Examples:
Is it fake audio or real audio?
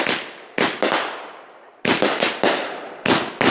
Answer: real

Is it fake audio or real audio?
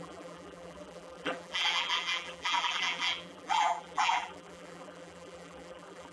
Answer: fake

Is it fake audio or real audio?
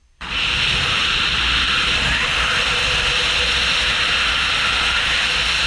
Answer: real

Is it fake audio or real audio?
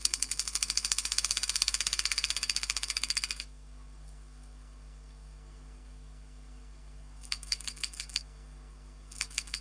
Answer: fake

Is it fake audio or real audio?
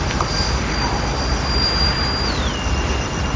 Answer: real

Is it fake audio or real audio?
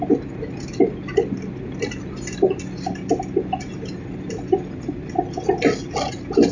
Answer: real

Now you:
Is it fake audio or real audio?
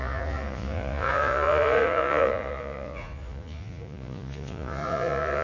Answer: fake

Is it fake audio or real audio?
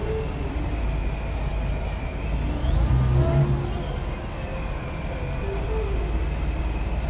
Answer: real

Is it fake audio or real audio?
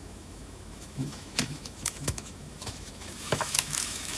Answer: fake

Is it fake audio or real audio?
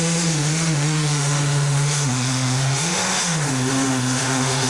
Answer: fake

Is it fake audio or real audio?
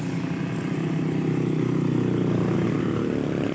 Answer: real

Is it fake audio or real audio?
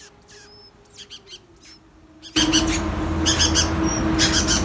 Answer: real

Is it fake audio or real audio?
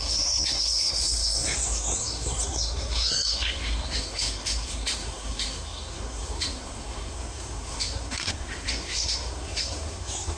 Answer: fake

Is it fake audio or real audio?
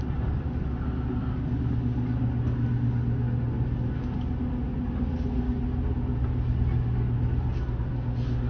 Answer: real